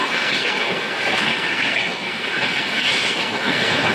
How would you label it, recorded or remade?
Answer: remade